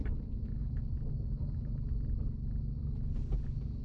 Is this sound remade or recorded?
recorded